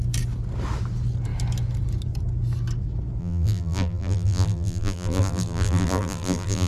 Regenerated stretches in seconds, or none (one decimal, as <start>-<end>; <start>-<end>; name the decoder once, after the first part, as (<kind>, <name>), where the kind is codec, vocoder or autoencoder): 3.2-6.7 (vocoder, BigVGAN v2)